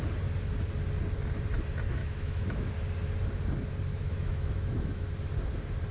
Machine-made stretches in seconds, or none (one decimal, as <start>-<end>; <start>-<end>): 2.0-2.7; 3.9-5.1